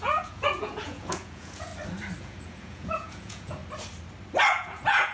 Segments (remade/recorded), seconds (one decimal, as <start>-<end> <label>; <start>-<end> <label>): 0.0-1.7 remade; 1.7-2.2 recorded; 2.2-3.6 remade; 3.6-4.5 recorded; 4.5-5.1 remade